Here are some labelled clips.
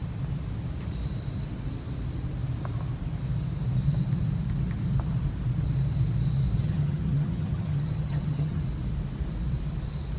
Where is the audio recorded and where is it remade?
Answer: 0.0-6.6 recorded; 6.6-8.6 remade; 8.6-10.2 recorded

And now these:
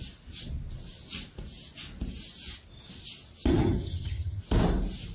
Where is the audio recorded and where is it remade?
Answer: 0.0-3.5 recorded; 3.5-4.4 remade; 4.4-5.1 recorded

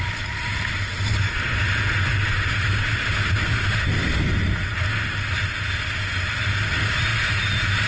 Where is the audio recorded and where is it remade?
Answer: 0.0-7.9 recorded